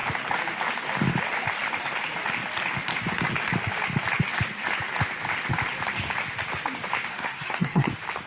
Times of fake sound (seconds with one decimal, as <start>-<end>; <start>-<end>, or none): 7.1-7.9